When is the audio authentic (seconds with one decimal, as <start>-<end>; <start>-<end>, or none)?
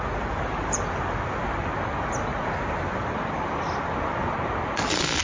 0.0-5.2